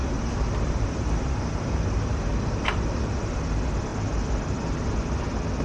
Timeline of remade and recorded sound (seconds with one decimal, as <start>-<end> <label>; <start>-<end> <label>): 0.0-3.4 remade; 3.4-3.9 recorded; 3.9-5.0 remade; 5.0-5.6 recorded